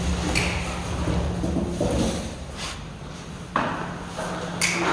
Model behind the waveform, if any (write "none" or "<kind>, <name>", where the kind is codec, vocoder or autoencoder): none